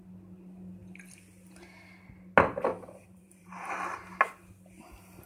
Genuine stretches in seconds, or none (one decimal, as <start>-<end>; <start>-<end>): 0.0-2.7; 3.7-5.3